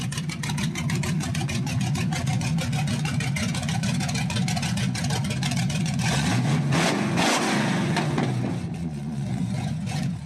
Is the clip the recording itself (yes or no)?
no